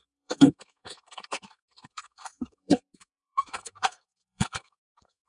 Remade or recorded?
remade